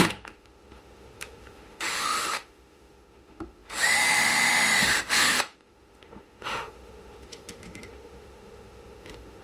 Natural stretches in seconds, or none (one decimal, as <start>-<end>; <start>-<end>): none